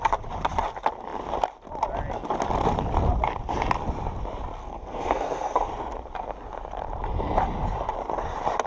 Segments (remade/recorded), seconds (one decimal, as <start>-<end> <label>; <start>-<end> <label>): 0.0-4.6 recorded; 4.6-5.7 remade; 5.7-8.7 recorded